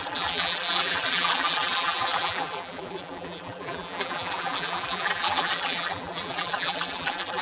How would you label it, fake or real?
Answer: fake